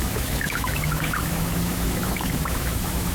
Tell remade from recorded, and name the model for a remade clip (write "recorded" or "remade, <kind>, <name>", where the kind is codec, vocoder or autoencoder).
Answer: remade, autoencoder, DAC-VAE